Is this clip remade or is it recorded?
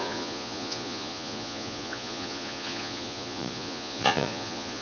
remade